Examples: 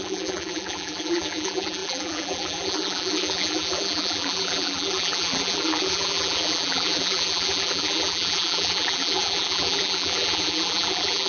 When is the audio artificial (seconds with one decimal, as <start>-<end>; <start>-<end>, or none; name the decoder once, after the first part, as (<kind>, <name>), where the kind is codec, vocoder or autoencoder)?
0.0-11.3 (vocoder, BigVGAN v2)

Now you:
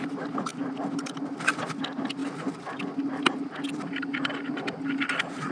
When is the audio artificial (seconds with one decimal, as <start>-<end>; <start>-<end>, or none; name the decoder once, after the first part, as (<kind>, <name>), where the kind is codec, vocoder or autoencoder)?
0.5-1.6 (vocoder, BigVGAN v2); 2.2-5.1

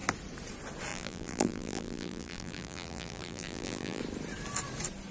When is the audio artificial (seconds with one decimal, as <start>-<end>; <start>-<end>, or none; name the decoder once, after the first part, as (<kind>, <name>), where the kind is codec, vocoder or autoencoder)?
0.9-4.0 (vocoder, BigVGAN v2)

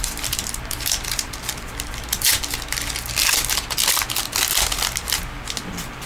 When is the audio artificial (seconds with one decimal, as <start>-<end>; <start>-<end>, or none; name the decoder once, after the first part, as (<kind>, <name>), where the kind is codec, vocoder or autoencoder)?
0.0-2.3 (vocoder, BigVGAN v2); 5.6-6.1

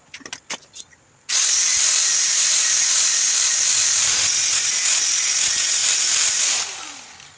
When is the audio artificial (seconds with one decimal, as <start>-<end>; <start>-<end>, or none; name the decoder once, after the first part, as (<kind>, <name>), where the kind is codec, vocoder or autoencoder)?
1.6-4.3 (vocoder, BigVGAN v2); 5.8-6.4